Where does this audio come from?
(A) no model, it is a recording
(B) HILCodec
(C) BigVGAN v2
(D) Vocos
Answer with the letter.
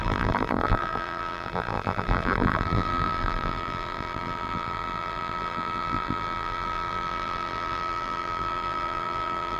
C